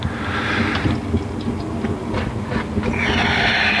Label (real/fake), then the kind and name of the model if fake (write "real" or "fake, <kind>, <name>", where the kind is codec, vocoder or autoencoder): real